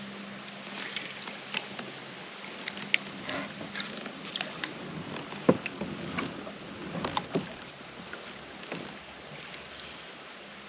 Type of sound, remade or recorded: recorded